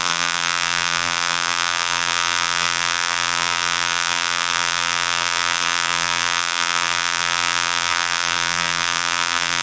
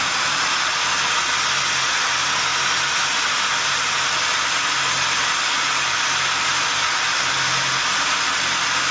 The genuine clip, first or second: second